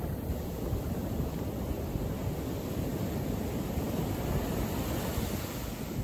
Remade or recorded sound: recorded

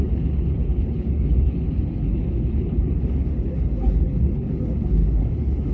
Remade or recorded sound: remade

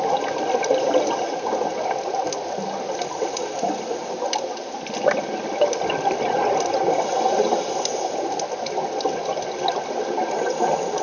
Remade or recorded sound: recorded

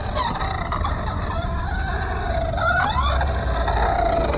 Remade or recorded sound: recorded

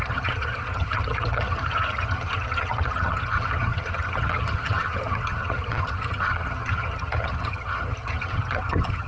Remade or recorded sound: remade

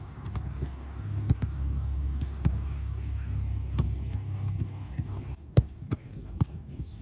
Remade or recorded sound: remade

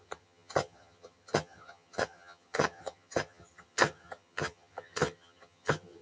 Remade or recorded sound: remade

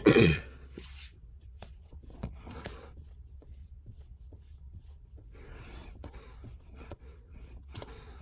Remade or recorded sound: remade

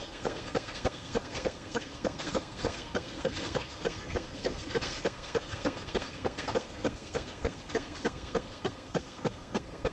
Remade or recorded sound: remade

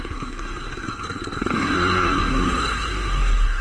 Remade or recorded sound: remade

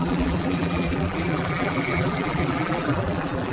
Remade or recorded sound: remade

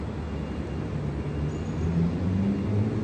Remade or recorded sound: recorded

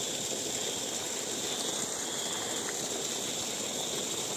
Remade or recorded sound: recorded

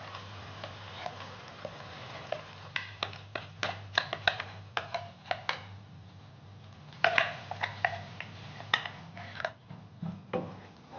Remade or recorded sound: recorded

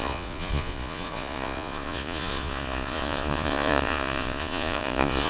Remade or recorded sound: remade